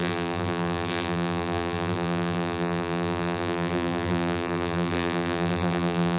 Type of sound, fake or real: fake